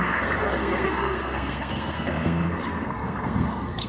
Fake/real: fake